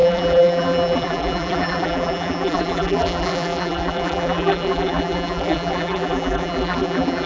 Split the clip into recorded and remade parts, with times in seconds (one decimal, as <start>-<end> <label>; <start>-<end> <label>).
0.0-7.3 remade